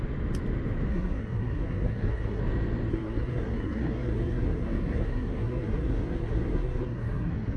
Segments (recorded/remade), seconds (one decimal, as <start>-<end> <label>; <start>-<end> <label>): 0.0-0.9 recorded; 0.9-2.4 remade; 2.4-2.9 recorded; 2.9-7.6 remade